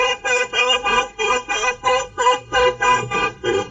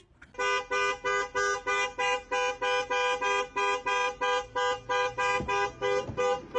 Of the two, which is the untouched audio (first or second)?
second